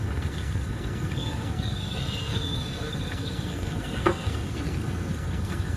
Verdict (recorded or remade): remade